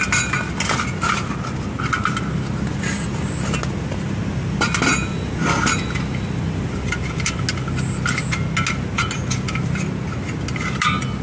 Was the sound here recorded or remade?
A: recorded